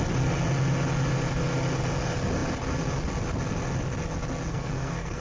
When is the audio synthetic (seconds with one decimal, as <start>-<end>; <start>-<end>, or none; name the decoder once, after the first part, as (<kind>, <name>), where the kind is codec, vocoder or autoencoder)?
4.5-5.2 (codec, SNAC)